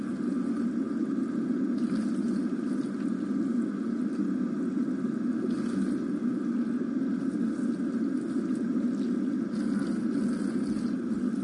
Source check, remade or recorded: recorded